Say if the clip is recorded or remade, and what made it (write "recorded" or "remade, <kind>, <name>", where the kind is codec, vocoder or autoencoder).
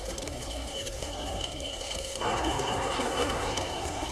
remade, codec, SNAC